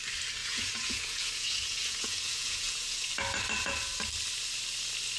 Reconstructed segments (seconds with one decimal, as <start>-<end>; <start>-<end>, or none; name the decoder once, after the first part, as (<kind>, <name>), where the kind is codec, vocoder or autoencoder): 0.4-3.1 (vocoder, Vocos)